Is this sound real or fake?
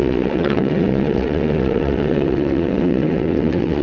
fake